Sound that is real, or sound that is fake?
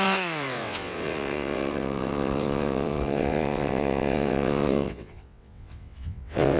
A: fake